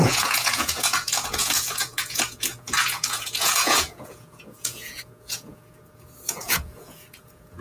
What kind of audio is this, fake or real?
fake